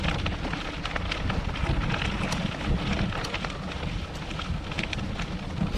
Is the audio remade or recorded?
recorded